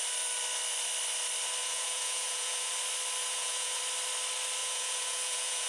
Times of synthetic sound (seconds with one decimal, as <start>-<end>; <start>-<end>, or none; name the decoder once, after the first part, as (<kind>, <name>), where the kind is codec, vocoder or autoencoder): 1.6-2.7 (vocoder, Vocos); 3.2-3.8; 4.6-5.7